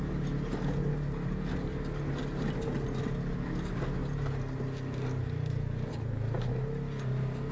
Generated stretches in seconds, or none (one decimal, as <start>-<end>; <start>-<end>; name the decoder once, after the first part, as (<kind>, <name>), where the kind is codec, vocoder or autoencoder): none